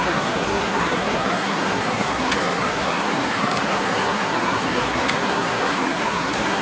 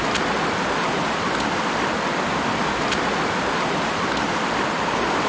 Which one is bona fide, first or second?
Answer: second